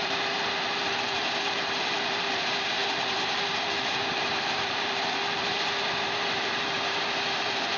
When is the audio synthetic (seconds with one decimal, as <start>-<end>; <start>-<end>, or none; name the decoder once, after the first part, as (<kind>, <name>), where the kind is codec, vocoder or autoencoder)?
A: 0.0-7.8 (vocoder, BigVGAN v2)

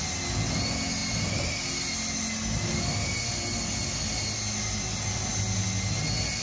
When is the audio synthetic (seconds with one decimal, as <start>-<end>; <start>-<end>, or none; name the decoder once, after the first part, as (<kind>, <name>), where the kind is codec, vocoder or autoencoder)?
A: none

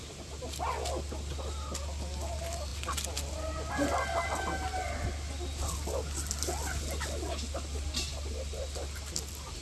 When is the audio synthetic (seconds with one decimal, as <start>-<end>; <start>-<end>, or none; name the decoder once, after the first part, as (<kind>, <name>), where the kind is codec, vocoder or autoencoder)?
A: none

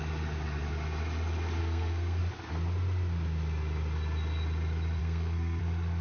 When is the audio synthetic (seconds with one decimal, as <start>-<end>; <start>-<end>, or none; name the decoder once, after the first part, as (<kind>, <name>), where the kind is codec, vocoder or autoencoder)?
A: 1.6-2.2 (codec, SNAC); 5.0-5.6

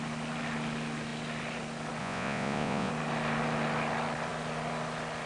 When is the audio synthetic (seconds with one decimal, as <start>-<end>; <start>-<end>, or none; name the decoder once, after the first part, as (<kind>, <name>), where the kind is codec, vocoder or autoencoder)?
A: 2.0-2.9 (vocoder, Vocos)